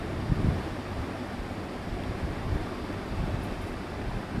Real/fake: real